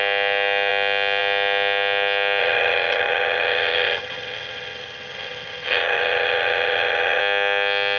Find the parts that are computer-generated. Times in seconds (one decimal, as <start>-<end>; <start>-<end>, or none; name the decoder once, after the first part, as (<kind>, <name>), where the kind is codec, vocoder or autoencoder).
2.4-7.2 (vocoder, HiFi-GAN)